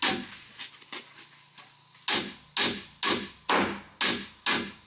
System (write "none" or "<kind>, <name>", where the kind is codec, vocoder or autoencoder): none